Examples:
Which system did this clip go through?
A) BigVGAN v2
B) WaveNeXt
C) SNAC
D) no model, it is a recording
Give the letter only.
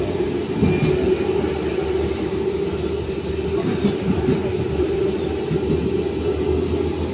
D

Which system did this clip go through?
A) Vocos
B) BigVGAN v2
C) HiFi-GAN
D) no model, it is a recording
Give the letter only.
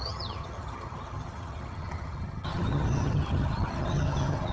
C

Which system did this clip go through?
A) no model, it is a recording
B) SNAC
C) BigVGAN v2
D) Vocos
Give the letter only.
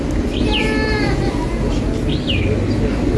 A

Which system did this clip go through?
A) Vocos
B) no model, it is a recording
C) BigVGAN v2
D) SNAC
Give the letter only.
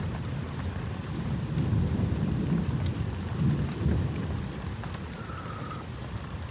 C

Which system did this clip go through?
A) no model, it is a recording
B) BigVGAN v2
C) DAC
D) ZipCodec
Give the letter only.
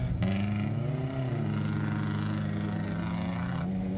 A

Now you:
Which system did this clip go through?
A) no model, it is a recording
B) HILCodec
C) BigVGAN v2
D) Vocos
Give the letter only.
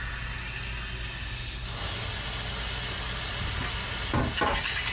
A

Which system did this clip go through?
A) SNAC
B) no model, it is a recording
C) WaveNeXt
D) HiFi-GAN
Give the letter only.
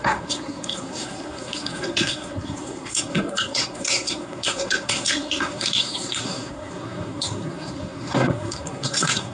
A